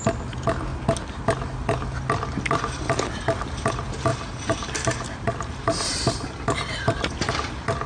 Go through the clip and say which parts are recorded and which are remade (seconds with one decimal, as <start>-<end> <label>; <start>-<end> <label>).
0.0-4.1 recorded; 4.1-7.3 remade; 7.3-7.9 recorded